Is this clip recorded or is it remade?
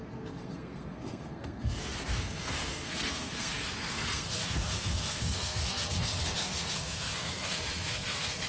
remade